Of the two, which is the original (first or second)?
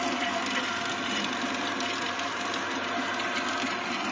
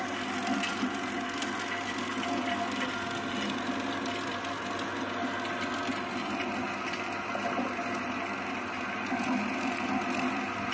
second